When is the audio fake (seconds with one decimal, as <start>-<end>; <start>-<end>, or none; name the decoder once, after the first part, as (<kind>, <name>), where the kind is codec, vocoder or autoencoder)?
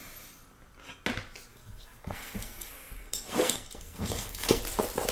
1.5-4.6 (codec, SNAC)